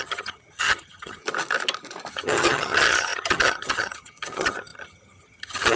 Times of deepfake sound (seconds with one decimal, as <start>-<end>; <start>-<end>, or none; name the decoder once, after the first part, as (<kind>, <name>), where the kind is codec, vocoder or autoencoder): 0.0-1.2 (vocoder, HiFi-GAN); 2.1-5.8

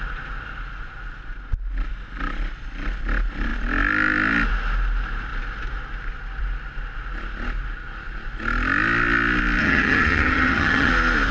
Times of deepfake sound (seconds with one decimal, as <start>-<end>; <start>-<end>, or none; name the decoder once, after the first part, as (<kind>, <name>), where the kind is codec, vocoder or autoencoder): 9.6-10.9 (vocoder, HiFi-GAN)

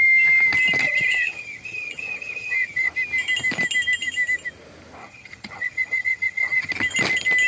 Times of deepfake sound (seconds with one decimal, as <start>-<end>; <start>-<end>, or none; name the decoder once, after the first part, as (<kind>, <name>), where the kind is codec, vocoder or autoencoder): 0.8-2.9 (vocoder, HiFi-GAN); 5.0-6.7